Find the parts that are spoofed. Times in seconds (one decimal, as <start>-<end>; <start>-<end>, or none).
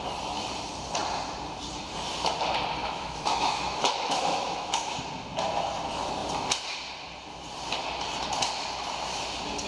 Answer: 2.8-5.0